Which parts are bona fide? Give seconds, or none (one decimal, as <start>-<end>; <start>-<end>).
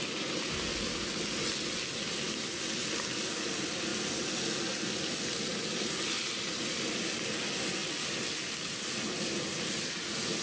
0.0-10.4